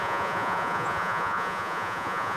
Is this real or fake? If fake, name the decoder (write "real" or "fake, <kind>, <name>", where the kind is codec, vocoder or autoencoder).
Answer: fake, vocoder, Vocos